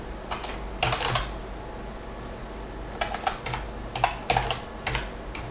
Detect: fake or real real